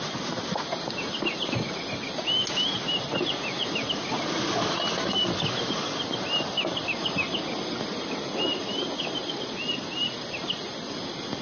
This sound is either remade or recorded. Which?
recorded